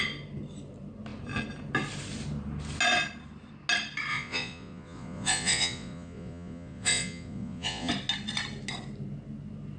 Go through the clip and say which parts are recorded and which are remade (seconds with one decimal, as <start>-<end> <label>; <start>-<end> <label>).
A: 0.0-4.1 recorded; 4.1-7.9 remade; 7.9-9.8 recorded